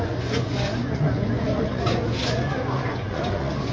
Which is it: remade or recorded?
remade